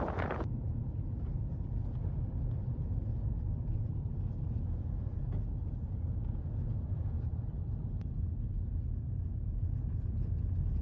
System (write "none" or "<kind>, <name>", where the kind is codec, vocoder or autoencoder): vocoder, Vocos